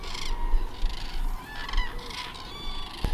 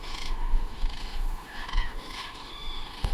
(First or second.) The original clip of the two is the first